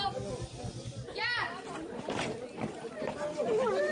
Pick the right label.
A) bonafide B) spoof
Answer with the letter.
A